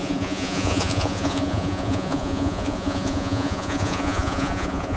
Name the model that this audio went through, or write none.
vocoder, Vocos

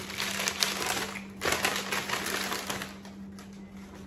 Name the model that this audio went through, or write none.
none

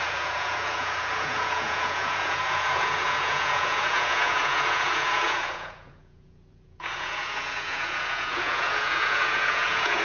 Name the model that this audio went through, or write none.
vocoder, Vocos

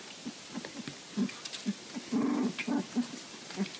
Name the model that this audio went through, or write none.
none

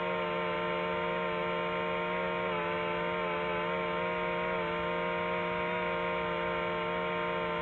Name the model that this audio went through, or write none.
none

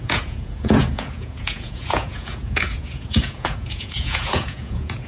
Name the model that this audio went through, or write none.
vocoder, Vocos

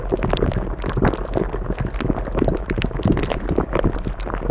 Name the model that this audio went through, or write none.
none